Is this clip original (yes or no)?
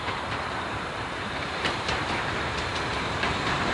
no